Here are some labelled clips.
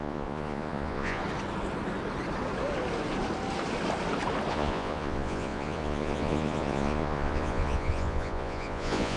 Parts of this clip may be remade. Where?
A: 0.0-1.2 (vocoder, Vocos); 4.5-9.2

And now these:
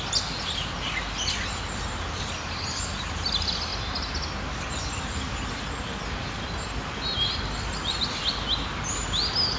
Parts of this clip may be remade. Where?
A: none

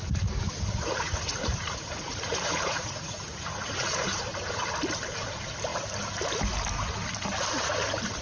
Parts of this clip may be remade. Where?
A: 0.7-4.6 (vocoder, Vocos)

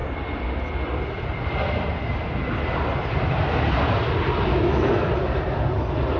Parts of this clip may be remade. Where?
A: 4.5-5.1 (autoencoder, DAC-VAE)

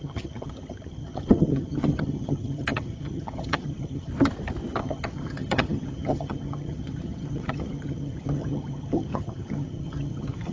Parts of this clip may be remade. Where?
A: 0.0-4.1 (vocoder, HiFi-GAN); 4.8-10.5

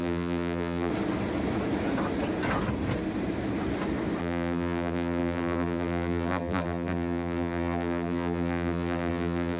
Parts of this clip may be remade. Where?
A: 0.0-0.9 (vocoder, BigVGAN v2); 4.2-9.6

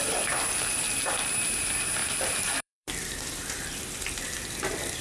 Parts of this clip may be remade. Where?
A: 0.0-0.5 (vocoder, BigVGAN v2); 2.0-5.0

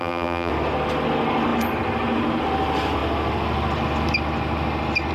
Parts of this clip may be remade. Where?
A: 0.0-0.5 (vocoder, BigVGAN v2)